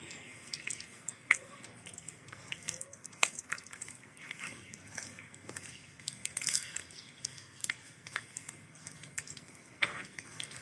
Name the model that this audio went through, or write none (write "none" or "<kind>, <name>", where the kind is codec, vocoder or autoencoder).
codec, SNAC